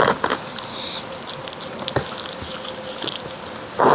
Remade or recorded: recorded